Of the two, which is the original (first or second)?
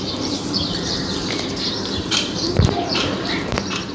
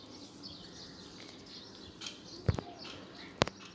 second